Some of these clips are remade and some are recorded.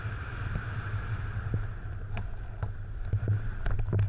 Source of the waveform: recorded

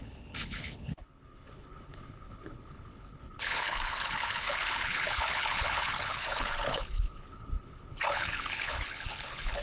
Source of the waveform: remade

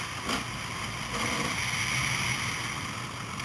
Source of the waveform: recorded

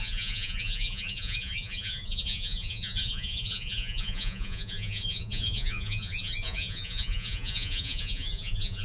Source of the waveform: remade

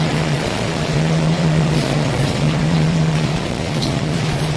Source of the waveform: remade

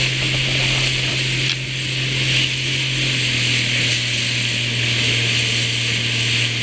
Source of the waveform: recorded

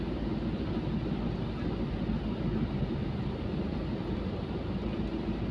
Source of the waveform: recorded